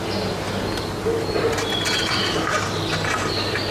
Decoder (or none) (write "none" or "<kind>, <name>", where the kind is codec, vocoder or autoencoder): none